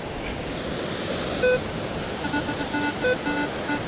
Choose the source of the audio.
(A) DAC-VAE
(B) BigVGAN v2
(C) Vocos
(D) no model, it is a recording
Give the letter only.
D